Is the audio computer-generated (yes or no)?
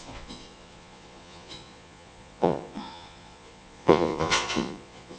yes